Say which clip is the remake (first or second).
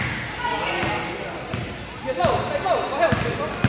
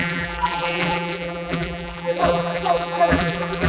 second